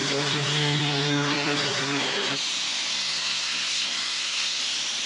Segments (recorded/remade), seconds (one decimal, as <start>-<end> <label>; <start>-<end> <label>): 0.0-2.3 remade; 2.3-2.9 recorded; 2.9-4.6 remade; 4.6-5.1 recorded